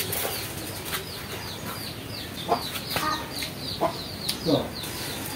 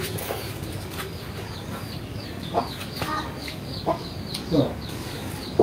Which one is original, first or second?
first